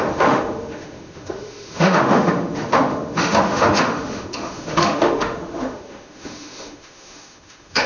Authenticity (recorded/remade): remade